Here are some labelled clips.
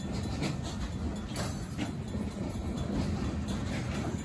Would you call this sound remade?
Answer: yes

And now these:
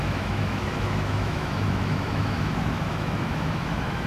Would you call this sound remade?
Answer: yes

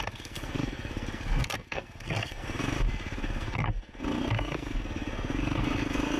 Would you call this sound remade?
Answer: yes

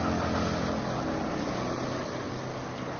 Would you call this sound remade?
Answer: no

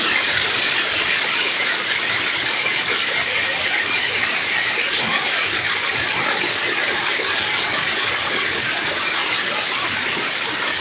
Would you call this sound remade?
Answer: yes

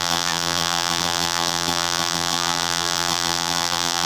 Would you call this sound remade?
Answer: yes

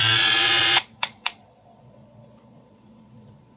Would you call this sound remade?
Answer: yes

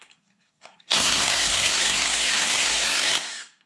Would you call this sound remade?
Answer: yes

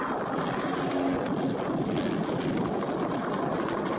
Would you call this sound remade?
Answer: no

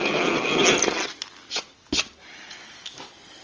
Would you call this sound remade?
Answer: no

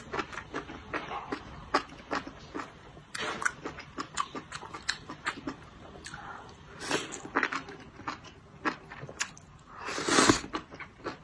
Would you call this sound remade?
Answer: no